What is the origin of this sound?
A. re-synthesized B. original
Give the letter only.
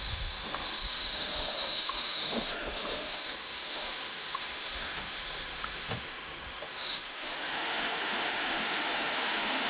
A